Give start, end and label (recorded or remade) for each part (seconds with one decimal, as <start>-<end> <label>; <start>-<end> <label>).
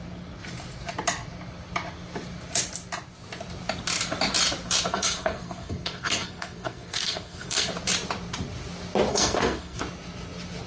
0.0-4.9 recorded; 4.9-7.7 remade; 7.7-9.1 recorded; 9.1-9.8 remade; 9.8-10.7 recorded